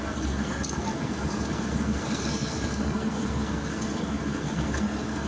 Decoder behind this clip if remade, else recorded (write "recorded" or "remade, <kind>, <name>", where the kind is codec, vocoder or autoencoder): remade, codec, SNAC